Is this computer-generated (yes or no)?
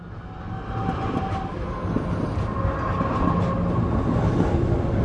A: no